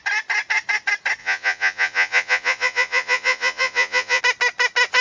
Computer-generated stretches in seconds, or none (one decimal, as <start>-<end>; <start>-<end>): 1.2-4.2